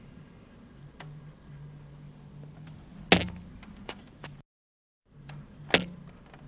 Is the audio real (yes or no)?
yes